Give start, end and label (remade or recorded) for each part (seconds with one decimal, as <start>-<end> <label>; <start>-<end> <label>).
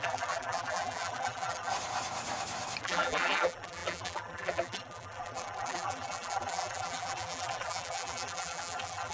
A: 0.0-1.7 remade; 1.7-2.8 recorded; 2.8-9.1 remade